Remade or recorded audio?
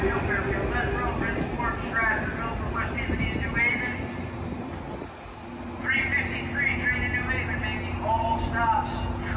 recorded